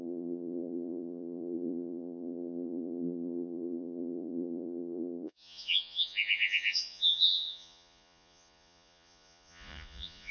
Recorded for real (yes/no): no